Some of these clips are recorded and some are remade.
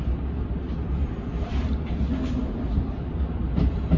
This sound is recorded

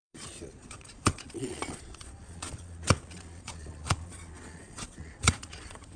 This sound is remade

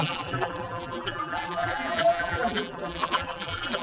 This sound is remade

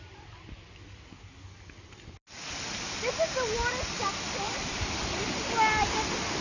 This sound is recorded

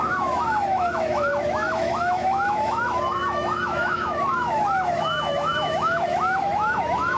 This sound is remade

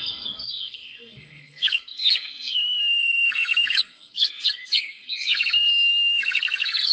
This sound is remade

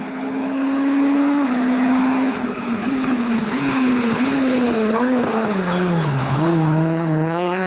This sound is remade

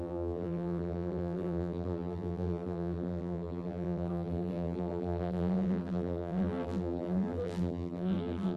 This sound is remade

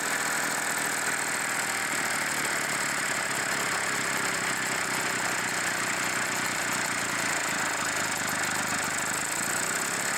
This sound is recorded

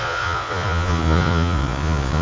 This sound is remade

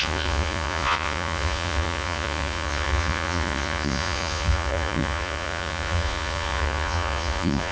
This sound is remade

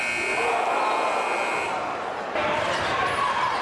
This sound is recorded